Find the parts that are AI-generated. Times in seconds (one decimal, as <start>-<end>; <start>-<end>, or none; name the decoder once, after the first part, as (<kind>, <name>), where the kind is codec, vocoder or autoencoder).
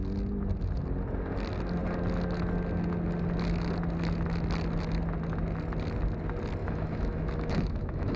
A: 6.6-8.2 (autoencoder, DAC-VAE)